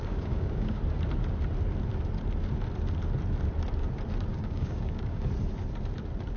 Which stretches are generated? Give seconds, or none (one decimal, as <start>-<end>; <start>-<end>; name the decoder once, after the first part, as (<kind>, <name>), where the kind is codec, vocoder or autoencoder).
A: 0.0-0.8 (codec, DAC); 4.3-5.3